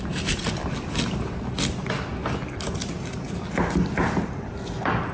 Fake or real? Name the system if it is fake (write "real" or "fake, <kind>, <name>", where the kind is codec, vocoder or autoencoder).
real